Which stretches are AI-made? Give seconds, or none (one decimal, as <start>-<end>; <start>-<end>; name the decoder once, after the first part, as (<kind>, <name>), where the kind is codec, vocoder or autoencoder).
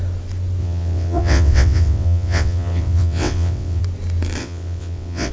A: 0.6-3.8 (vocoder, WaveNeXt); 4.4-5.3